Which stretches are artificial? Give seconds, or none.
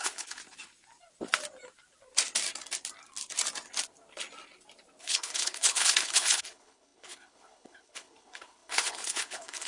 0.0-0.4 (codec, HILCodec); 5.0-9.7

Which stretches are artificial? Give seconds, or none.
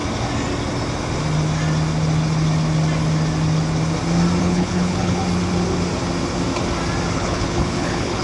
4.4-5.2 (codec, HILCodec); 7.1-8.2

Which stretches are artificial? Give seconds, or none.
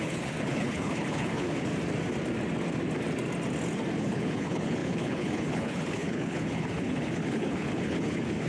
0.0-1.7 (codec, HILCodec); 4.0-8.5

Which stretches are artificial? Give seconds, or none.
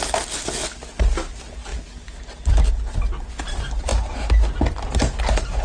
none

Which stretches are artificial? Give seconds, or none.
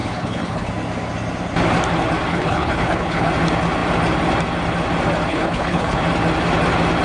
0.0-0.7 (codec, HILCodec); 2.3-3.3; 5.3-6.0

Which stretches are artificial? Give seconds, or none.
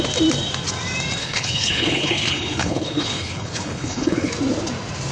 1.2-4.3 (codec, HILCodec)